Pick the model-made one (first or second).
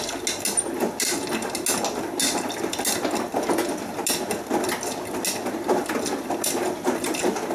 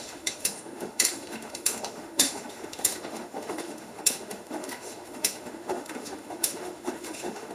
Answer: second